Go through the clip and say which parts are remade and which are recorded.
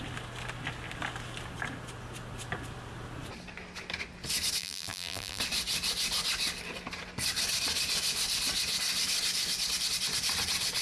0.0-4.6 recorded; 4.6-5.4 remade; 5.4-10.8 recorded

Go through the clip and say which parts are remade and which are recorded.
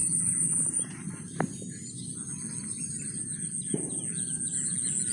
0.0-0.9 remade; 0.9-2.6 recorded; 2.6-4.0 remade; 4.0-5.1 recorded